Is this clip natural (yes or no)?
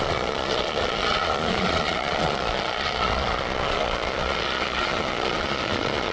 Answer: no